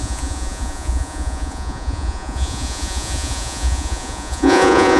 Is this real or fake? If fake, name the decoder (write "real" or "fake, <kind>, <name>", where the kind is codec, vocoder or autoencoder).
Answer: fake, vocoder, Vocos